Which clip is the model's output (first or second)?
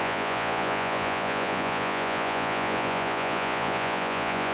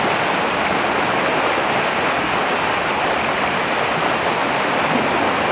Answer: first